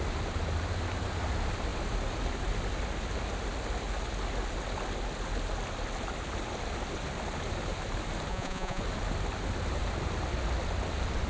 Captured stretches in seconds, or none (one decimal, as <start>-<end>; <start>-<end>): 0.0-8.3; 8.8-11.3